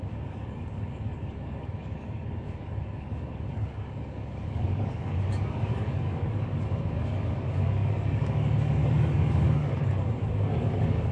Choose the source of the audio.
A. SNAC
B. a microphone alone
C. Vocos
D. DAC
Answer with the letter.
D